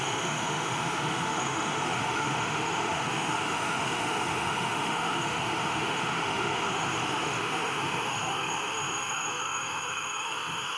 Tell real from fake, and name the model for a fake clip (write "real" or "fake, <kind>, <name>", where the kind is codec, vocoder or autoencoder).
fake, autoencoder, DAC-VAE